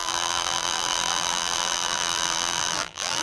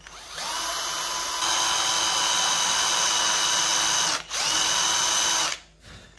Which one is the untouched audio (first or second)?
second